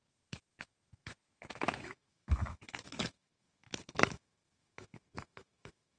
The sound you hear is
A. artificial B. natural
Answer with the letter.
A